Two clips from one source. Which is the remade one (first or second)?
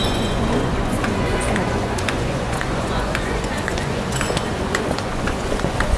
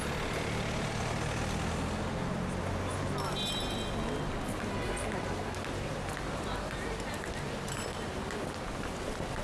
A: first